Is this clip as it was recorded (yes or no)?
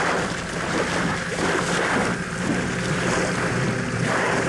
yes